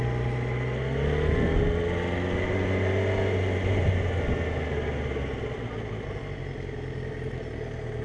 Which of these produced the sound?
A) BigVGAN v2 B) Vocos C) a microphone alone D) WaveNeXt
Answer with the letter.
C